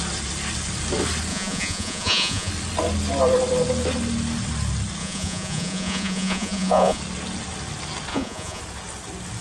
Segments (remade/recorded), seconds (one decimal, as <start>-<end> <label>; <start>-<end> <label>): 0.0-1.3 recorded; 1.3-2.5 remade; 2.5-5.0 recorded; 5.0-7.0 remade; 7.0-8.1 recorded; 8.1-8.6 remade; 8.6-9.4 recorded